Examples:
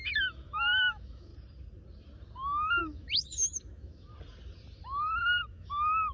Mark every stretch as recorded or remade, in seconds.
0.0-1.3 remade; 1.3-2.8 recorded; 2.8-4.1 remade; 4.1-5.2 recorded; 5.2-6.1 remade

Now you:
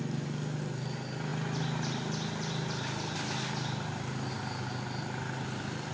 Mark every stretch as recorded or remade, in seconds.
0.0-5.9 recorded

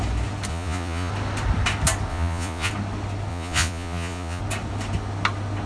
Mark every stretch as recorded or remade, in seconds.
0.0-0.5 recorded; 0.5-1.1 remade; 1.1-2.1 recorded; 2.1-2.7 remade; 2.7-3.3 recorded; 3.3-4.4 remade; 4.4-5.7 recorded

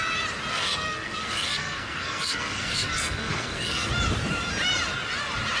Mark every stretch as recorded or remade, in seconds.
0.0-0.5 recorded; 0.5-3.9 remade; 3.9-5.6 recorded

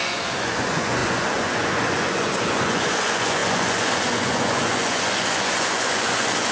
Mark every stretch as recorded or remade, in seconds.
0.0-6.5 remade

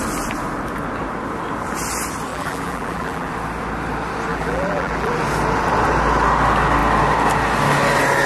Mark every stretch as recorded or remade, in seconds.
0.0-2.3 recorded; 2.3-3.3 remade; 3.3-4.3 recorded; 4.3-5.1 remade; 5.1-8.3 recorded

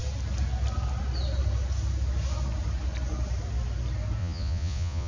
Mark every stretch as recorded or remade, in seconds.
0.0-4.2 recorded; 4.2-5.1 remade